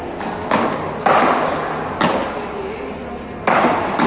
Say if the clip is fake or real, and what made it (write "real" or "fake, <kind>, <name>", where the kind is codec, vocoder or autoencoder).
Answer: real